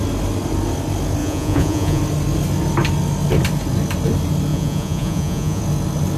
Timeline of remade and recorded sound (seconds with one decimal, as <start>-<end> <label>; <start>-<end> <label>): 0.0-1.2 recorded; 1.2-2.0 remade; 2.0-4.5 recorded; 4.5-5.6 remade; 5.6-6.2 recorded